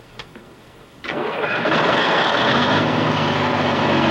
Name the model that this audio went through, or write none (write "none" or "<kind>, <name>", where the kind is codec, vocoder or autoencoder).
codec, SNAC